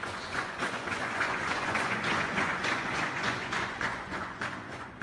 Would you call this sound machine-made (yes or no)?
yes